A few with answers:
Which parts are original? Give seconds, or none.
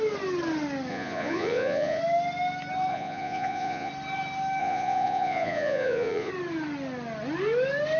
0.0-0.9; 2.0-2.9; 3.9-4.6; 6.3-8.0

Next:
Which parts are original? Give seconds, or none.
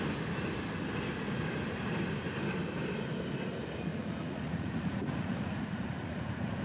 0.0-3.9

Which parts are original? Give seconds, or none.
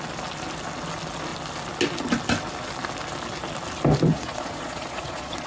0.0-4.1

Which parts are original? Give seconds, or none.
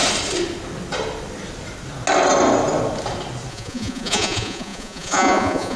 0.0-3.5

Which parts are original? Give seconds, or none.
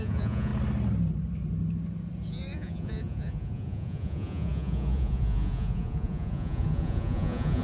0.5-2.3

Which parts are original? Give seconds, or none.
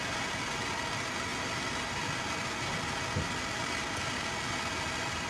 0.0-5.3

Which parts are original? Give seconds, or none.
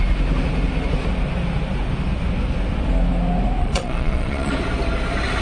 0.0-3.6; 4.5-5.4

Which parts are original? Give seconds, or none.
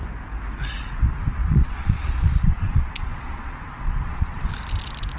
0.0-1.4; 4.5-5.2